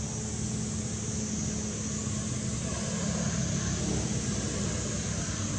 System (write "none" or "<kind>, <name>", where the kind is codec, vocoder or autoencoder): none